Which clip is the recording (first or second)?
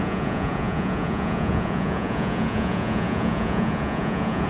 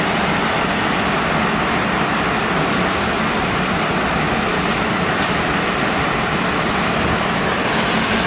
second